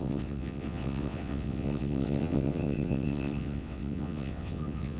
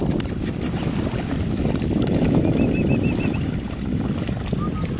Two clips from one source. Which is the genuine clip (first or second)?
second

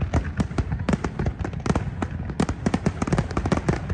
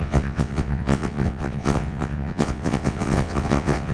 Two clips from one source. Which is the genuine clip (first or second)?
first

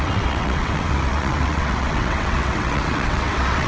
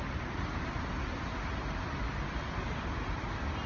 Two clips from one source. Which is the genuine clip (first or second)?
second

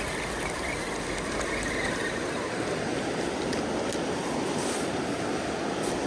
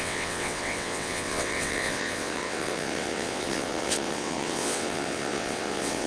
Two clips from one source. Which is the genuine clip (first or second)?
first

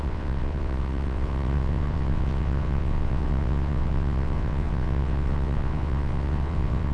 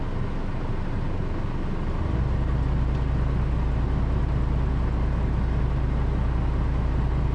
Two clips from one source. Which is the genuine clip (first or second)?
second